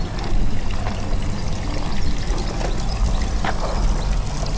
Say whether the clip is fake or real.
real